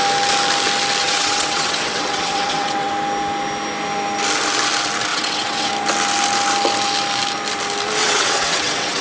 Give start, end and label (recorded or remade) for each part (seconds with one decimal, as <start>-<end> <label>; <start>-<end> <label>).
0.0-1.0 recorded; 1.0-2.9 remade; 2.9-5.1 recorded; 5.1-5.7 remade; 5.7-8.0 recorded; 8.0-9.0 remade